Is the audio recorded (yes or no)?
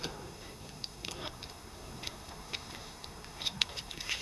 no